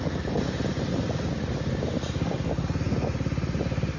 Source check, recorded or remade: recorded